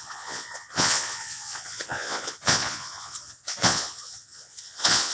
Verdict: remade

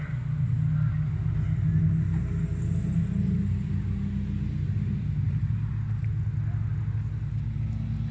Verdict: recorded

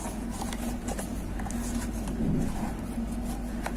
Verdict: recorded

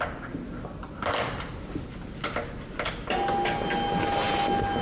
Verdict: recorded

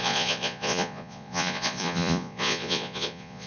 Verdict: remade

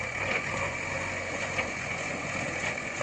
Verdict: remade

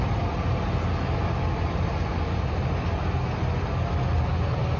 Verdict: recorded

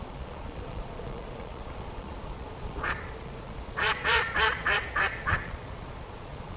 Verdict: remade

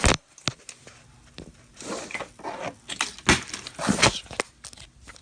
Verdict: recorded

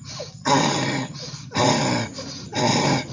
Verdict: recorded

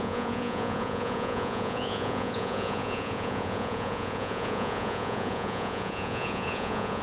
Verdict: remade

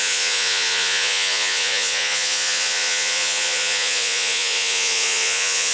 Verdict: remade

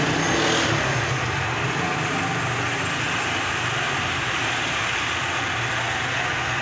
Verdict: recorded